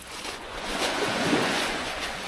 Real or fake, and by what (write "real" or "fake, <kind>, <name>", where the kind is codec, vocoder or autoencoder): fake, vocoder, Vocos